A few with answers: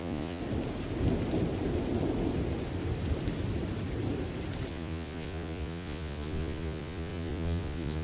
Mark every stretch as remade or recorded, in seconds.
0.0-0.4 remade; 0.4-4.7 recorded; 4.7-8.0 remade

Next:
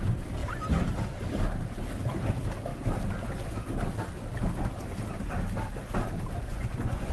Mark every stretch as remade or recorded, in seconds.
0.0-6.5 recorded; 6.5-7.1 remade

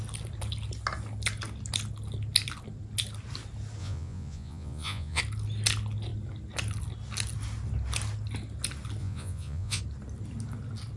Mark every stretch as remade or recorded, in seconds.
0.0-3.8 recorded; 3.8-5.2 remade; 5.2-9.0 recorded; 9.0-9.8 remade; 9.8-11.0 recorded

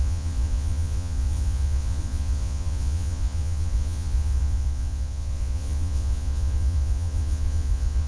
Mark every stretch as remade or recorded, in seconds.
0.0-8.1 remade

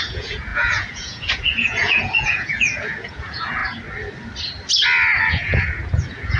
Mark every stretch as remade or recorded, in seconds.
0.0-3.6 remade; 3.6-5.3 recorded; 5.3-6.4 remade